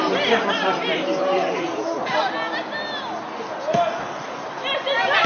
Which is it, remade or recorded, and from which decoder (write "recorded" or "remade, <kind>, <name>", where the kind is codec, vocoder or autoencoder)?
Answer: recorded